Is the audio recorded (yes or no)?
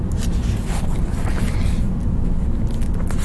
yes